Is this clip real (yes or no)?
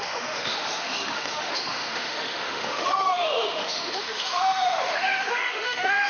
no